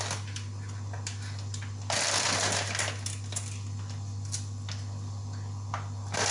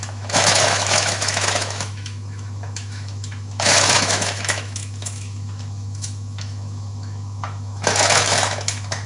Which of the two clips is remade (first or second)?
second